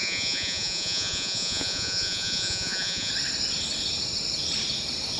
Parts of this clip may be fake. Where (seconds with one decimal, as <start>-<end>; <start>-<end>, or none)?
0.0-3.1